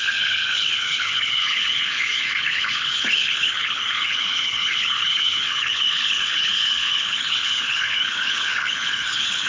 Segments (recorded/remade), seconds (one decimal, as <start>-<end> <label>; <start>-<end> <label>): 0.0-9.5 remade